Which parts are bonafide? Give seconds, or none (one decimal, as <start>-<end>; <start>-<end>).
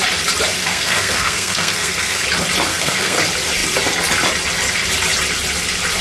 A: 0.0-0.6; 2.2-2.7; 3.2-6.0